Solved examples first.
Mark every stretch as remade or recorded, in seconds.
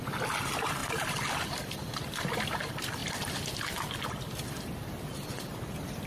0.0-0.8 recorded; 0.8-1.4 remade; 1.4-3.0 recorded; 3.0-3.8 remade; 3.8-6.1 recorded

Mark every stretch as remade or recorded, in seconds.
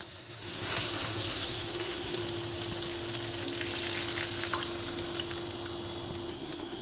0.0-2.2 remade; 2.2-6.3 recorded; 6.3-6.8 remade